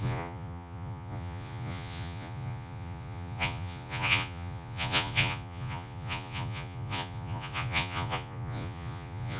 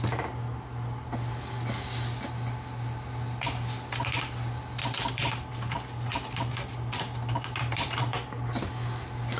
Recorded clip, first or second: second